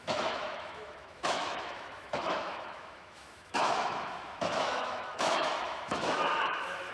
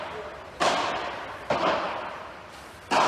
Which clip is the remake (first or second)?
first